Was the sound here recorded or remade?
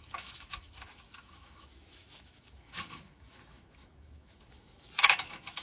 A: remade